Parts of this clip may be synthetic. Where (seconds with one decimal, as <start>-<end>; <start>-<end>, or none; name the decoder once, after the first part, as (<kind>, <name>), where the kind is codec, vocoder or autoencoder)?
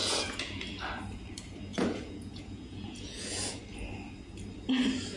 0.0-0.6 (vocoder, Vocos); 1.7-3.6